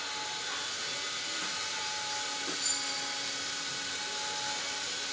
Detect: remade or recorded recorded